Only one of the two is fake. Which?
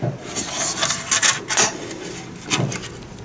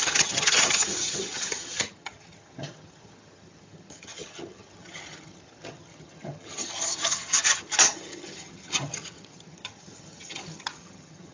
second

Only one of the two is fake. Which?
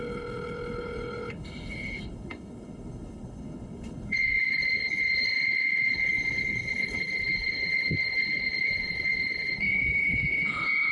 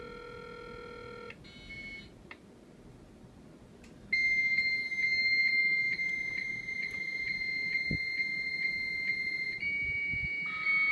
first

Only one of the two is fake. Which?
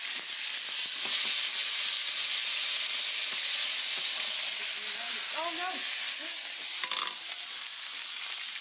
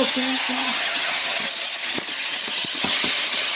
second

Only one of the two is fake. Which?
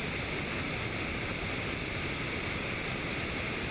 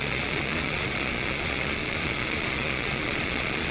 second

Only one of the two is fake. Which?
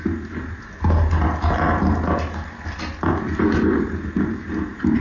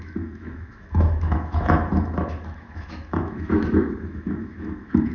second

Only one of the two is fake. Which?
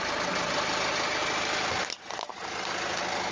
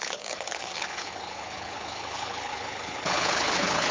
second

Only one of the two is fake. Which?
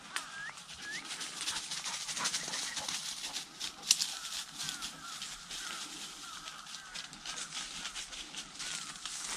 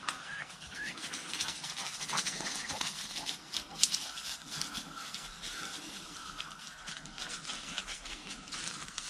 second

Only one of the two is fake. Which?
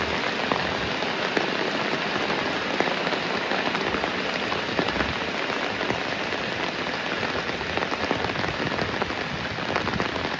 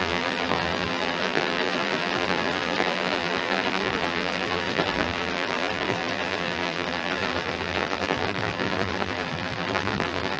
second